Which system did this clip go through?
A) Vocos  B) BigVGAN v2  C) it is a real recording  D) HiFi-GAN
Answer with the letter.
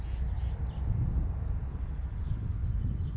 C